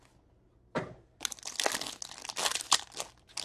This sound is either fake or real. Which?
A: real